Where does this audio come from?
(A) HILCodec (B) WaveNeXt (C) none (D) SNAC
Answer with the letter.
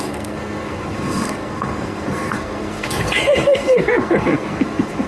D